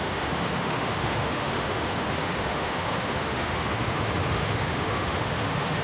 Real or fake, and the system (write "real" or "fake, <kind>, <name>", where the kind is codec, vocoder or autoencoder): fake, autoencoder, DAC-VAE